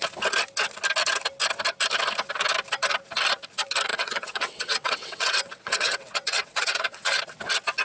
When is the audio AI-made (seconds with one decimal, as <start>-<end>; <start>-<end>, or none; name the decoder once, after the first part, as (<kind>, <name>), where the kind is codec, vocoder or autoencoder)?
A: 3.9-7.2 (vocoder, WaveNeXt)